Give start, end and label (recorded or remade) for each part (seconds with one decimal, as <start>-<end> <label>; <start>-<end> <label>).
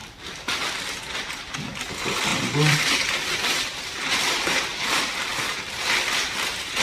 0.0-1.0 remade; 1.0-2.3 recorded; 2.3-5.7 remade; 5.7-6.8 recorded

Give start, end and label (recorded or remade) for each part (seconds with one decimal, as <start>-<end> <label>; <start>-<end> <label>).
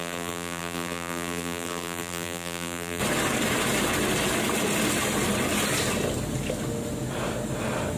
0.0-3.0 remade; 3.0-8.0 recorded